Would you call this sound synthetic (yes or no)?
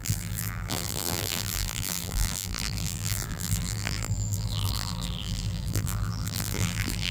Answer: yes